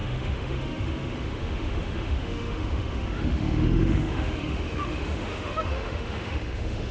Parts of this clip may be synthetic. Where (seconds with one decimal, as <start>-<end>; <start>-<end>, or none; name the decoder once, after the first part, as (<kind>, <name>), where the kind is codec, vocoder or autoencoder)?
0.0-6.9 (autoencoder, DAC-VAE)